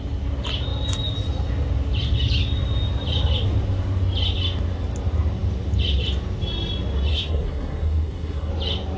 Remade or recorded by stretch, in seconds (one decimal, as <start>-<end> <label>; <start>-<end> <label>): 0.0-7.1 recorded; 7.1-8.5 remade; 8.5-9.0 recorded